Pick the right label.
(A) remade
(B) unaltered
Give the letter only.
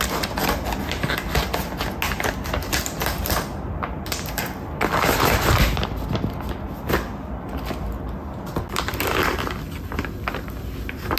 B